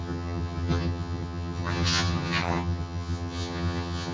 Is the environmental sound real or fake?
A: fake